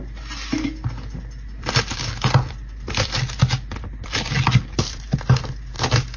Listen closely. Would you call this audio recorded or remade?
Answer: recorded